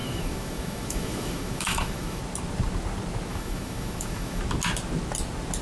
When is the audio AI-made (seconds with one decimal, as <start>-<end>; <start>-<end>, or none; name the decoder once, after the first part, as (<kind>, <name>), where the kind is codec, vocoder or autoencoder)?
0.0-2.2 (autoencoder, DAC-VAE); 3.3-4.4

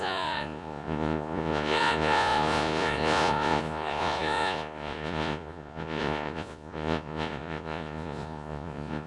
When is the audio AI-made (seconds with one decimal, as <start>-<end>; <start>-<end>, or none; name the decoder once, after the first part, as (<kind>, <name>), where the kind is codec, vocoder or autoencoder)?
0.0-9.1 (vocoder, Vocos)

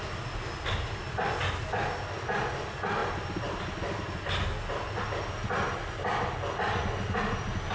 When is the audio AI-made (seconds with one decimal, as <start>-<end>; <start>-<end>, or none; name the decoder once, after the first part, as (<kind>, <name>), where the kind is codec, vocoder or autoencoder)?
none

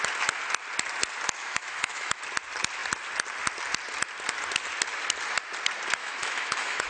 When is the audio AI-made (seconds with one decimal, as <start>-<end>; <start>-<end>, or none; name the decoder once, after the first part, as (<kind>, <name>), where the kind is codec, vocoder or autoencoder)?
1.4-2.2 (autoencoder, DAC-VAE); 6.0-6.9

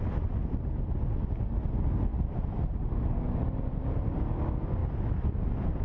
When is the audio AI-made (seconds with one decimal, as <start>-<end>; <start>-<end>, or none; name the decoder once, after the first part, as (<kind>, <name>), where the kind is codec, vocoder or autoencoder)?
none

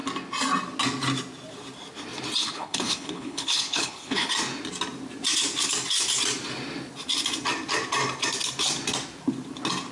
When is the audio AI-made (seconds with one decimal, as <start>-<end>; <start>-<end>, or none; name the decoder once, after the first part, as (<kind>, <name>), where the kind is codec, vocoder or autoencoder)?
2.4-4.3 (codec, HILCodec)